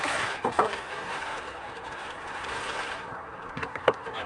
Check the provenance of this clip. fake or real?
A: fake